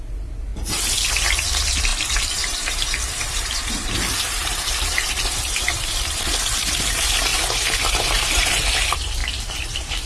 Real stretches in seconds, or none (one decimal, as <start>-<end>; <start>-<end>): 0.5-1.1; 9.2-10.1